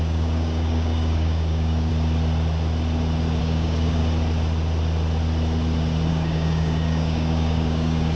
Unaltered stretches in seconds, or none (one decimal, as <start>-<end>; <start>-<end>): 1.9-3.4; 4.0-6.1